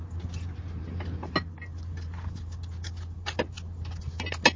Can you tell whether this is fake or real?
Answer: real